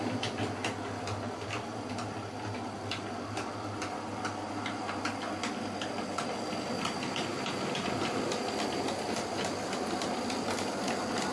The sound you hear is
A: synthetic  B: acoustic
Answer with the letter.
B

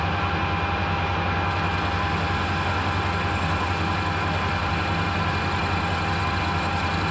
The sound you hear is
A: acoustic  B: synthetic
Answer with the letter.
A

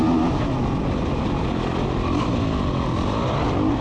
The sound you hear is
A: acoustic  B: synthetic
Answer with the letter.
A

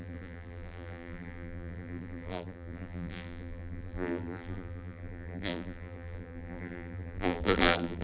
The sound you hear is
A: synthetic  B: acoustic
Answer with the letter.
A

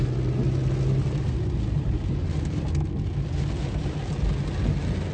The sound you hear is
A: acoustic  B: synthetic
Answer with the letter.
A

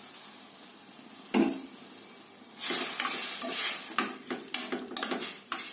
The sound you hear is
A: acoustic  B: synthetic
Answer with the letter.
A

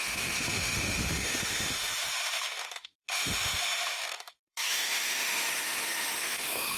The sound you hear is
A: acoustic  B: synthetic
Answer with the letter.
B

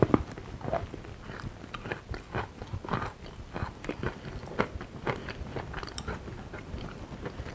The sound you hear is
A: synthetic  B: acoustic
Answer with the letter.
B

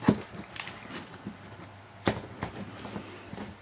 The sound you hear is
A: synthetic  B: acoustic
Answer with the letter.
B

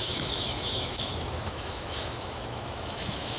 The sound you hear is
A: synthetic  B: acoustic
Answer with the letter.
A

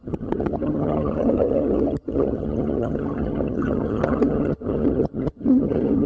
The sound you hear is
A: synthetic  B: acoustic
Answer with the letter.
A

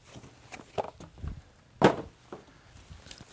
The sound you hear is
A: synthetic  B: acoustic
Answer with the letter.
B